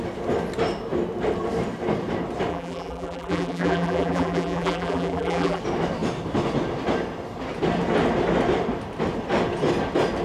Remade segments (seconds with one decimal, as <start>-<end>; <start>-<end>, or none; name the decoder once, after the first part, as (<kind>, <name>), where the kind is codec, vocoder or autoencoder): 2.5-5.6 (vocoder, BigVGAN v2)

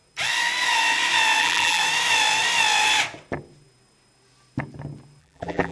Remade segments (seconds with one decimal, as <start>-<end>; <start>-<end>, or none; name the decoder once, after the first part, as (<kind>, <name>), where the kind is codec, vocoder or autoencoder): 1.4-1.8 (vocoder, BigVGAN v2); 5.2-5.7

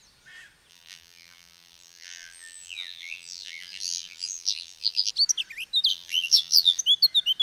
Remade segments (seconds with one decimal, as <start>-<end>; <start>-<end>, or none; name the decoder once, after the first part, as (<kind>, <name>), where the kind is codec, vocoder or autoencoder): 0.7-5.1 (vocoder, BigVGAN v2); 5.9-6.8

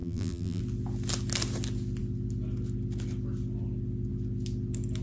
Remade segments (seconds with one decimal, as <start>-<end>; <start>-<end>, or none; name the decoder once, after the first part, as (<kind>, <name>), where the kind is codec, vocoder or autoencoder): 0.0-0.6 (vocoder, BigVGAN v2)

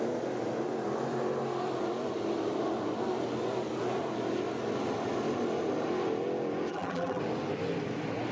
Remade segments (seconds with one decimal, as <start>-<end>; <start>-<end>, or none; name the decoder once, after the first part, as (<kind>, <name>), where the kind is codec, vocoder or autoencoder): 6.7-7.2 (vocoder, BigVGAN v2)

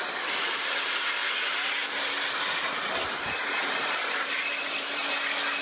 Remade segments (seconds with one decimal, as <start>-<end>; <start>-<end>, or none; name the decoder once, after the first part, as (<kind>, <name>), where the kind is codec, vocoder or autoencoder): 0.0-1.2 (vocoder, BigVGAN v2); 1.9-5.0